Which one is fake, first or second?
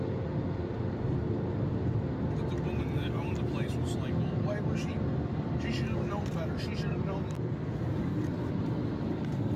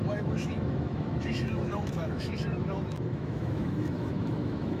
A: second